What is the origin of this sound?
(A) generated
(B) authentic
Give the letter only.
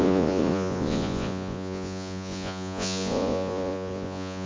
A